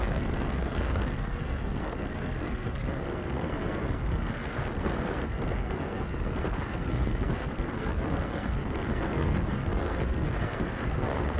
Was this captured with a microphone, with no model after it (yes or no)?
no